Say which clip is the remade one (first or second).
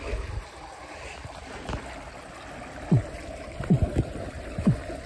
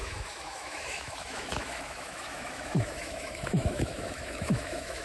second